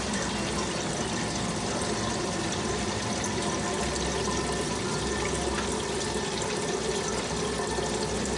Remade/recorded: recorded